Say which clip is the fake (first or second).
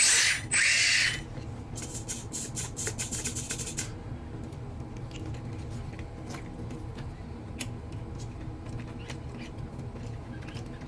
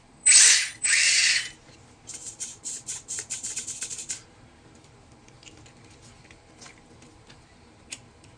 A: second